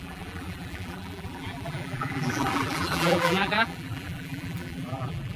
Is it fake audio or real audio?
fake